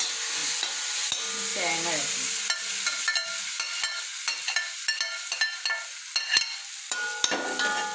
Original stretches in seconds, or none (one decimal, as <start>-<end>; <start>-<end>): 0.0-7.9